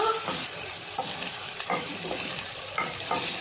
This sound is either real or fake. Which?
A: real